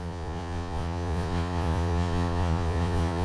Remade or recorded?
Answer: remade